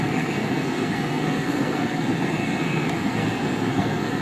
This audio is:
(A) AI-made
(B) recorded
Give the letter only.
A